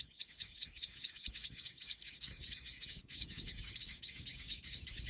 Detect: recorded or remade remade